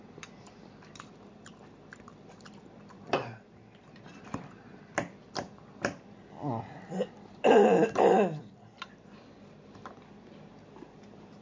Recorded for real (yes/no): no